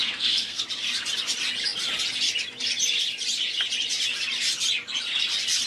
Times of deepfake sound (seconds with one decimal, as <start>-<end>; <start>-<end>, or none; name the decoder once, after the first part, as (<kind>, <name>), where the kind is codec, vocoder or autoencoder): 0.0-0.6 (codec, SNAC)